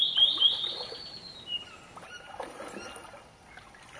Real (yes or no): yes